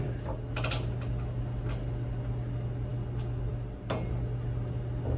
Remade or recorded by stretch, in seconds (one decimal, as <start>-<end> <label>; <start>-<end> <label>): 0.0-5.2 recorded